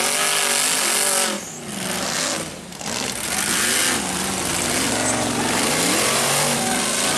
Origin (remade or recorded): recorded